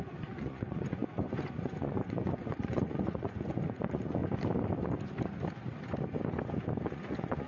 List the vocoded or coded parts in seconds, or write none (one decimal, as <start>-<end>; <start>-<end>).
0.0-4.2; 6.8-7.5